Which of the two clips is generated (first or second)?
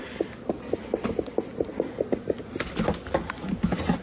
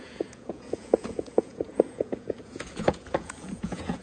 second